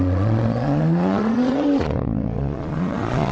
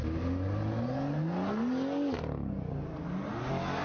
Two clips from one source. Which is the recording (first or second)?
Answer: second